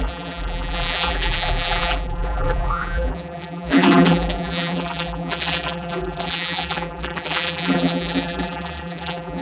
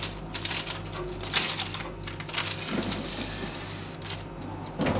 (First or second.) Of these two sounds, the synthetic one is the first